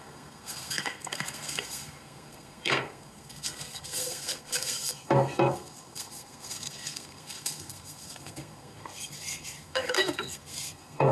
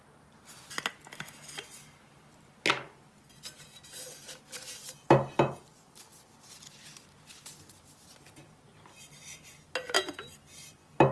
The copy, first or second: first